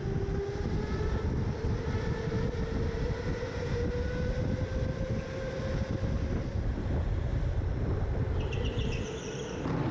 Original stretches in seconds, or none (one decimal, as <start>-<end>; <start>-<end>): 0.0-7.3; 8.1-9.9